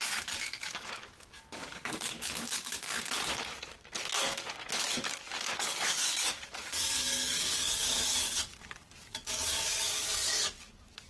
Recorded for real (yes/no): no